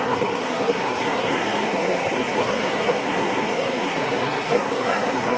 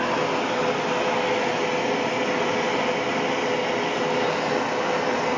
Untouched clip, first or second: second